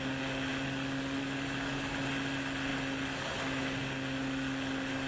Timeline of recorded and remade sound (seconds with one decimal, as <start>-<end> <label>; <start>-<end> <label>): 0.0-5.1 recorded